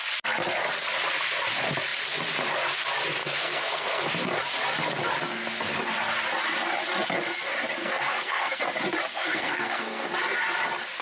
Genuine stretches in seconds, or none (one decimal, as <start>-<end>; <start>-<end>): 0.0-3.2; 4.0-7.8; 8.6-9.1; 10.1-11.0